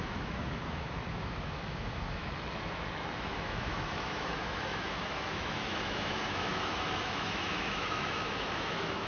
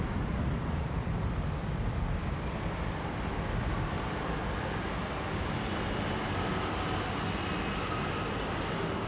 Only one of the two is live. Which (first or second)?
second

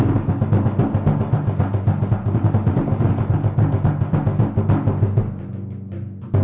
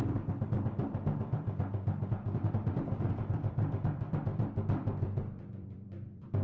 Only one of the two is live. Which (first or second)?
first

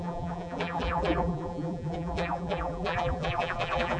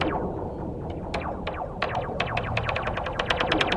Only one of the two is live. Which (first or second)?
second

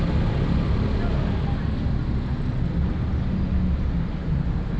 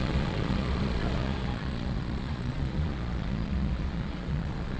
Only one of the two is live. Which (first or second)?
first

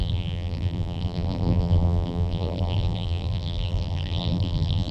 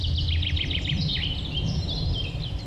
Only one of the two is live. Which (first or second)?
second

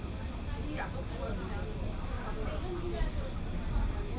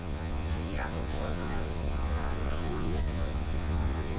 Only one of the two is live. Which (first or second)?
first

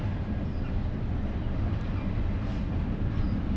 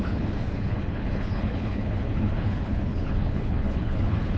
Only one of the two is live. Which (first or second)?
first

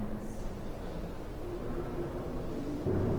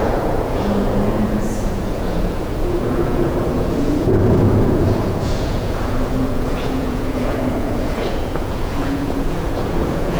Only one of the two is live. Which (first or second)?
first